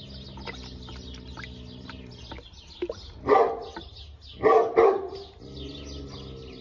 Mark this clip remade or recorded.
recorded